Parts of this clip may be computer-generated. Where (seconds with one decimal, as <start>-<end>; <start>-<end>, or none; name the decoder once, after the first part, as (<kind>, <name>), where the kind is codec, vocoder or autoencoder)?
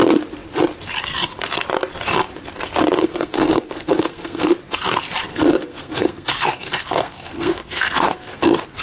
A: 3.0-4.6 (codec, SNAC); 5.3-8.8